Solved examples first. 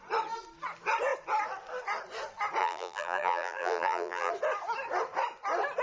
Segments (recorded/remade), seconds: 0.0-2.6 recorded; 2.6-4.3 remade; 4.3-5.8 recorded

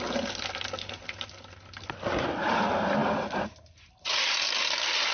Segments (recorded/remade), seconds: 0.0-5.1 recorded